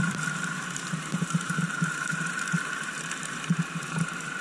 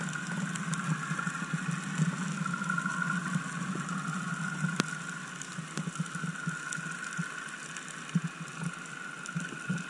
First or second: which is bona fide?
second